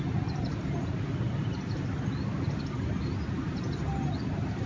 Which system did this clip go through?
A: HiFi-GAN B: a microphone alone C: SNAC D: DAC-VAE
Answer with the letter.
B